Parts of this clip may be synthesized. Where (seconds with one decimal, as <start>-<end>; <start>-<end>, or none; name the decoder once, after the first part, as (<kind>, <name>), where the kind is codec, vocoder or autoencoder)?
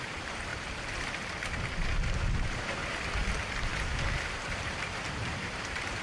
0.0-0.5 (vocoder, BigVGAN v2); 2.5-6.0